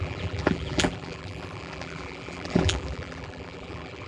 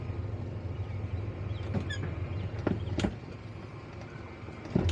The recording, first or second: second